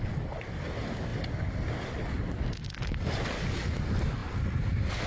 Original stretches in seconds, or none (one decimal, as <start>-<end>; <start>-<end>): 0.0-5.1